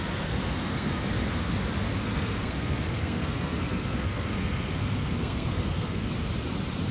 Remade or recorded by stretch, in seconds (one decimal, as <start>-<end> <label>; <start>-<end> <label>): 0.0-1.5 remade; 1.5-2.0 recorded; 2.0-6.1 remade; 6.1-6.9 recorded

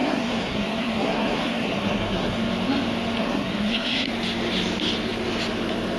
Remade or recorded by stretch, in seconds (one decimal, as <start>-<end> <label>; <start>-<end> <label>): 0.0-2.5 remade; 2.5-3.2 recorded; 3.2-4.1 remade; 4.1-6.0 recorded

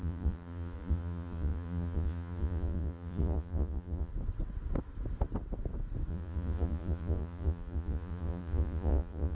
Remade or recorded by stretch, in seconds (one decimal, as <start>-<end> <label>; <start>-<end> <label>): 0.0-4.1 remade; 4.1-6.1 recorded; 6.1-9.3 remade

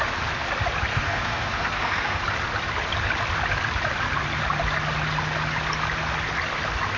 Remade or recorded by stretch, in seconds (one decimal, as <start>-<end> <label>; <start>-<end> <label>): 0.0-0.9 recorded; 0.9-2.2 remade; 2.2-7.0 recorded

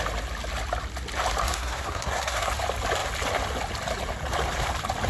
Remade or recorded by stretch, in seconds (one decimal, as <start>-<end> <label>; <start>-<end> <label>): 0.0-1.4 recorded; 1.4-2.5 remade; 2.5-5.1 recorded

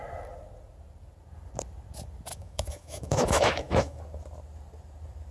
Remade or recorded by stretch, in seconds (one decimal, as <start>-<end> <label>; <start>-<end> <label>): 0.0-2.3 recorded; 2.3-4.0 remade; 4.0-5.3 recorded

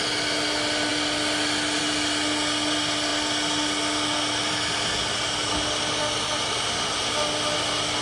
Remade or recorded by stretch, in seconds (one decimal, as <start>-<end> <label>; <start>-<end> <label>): 0.0-8.0 recorded